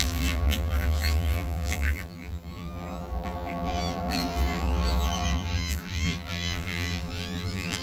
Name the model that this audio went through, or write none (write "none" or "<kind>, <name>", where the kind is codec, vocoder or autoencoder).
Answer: vocoder, BigVGAN v2